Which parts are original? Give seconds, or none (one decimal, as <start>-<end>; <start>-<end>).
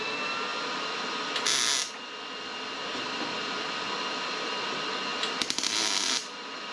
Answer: 0.0-6.7